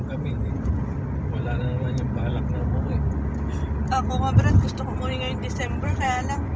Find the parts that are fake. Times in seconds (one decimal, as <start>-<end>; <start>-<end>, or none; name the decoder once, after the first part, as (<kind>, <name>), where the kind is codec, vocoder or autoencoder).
0.0-3.9 (vocoder, BigVGAN v2); 4.7-6.6

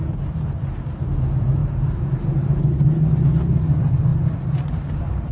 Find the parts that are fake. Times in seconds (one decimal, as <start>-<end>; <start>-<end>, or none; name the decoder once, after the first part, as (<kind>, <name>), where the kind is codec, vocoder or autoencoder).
4.1-5.3 (vocoder, BigVGAN v2)

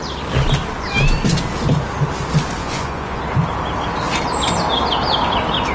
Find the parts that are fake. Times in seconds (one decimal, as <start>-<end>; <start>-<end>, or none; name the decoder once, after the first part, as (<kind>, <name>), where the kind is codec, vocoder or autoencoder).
2.6-3.2 (vocoder, Vocos)

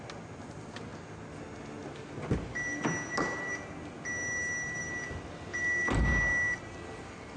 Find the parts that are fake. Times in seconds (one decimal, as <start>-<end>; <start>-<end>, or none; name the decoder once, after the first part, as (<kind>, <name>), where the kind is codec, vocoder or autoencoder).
none

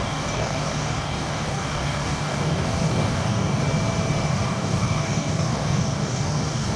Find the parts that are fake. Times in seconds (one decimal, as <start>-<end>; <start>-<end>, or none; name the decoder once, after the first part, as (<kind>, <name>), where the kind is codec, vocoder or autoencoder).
0.0-3.6 (codec, DAC); 4.3-6.8